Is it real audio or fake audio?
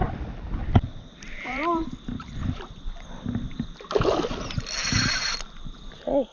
fake